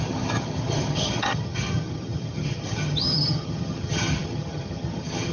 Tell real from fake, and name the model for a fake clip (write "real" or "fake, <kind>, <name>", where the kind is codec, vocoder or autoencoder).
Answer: fake, vocoder, HiFi-GAN